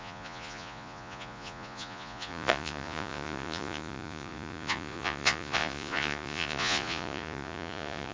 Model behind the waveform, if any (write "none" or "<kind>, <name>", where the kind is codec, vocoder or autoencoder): vocoder, Vocos